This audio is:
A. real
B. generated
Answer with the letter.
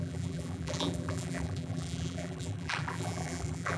B